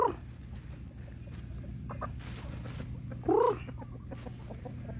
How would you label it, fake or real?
real